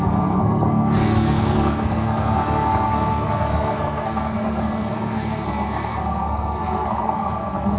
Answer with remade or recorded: remade